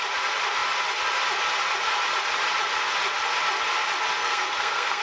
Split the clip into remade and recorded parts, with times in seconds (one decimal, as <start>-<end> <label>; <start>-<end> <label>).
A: 0.0-4.2 recorded; 4.2-5.0 remade